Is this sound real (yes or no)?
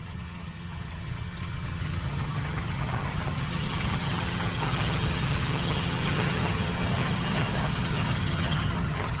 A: no